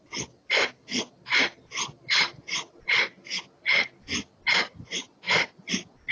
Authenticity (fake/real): real